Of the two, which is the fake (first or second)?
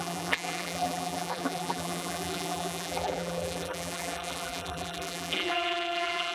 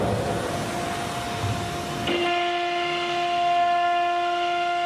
first